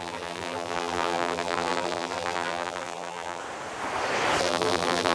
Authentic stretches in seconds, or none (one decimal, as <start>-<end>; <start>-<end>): 3.4-4.4